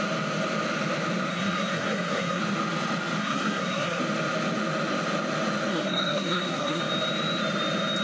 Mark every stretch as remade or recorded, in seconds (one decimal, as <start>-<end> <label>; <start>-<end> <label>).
0.0-1.3 recorded; 1.3-2.4 remade; 2.4-3.2 recorded; 3.2-4.0 remade; 4.0-5.7 recorded; 5.7-6.8 remade; 6.8-8.0 recorded